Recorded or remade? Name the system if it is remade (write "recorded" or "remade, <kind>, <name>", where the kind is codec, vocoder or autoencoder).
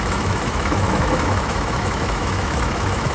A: remade, autoencoder, DAC-VAE